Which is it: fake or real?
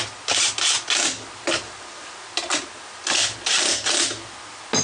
real